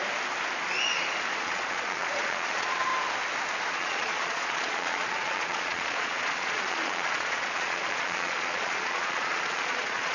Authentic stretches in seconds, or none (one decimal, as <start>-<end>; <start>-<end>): 0.0-1.4; 2.9-3.7